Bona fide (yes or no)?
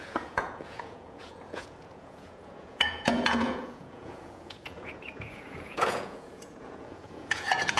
no